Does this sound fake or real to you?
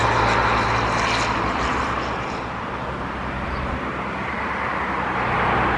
real